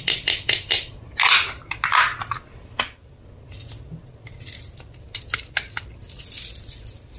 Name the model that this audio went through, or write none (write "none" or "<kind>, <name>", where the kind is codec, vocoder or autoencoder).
none